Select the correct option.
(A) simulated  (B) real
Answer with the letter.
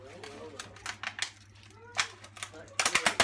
B